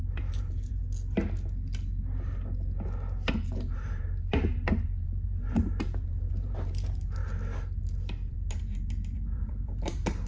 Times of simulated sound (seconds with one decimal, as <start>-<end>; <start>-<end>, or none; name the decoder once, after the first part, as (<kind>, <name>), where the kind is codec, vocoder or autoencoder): 0.0-0.8 (vocoder, BigVGAN v2); 3.3-7.2; 8.3-10.3